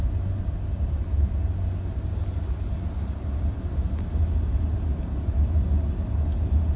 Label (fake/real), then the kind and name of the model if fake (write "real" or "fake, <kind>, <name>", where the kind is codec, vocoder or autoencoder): real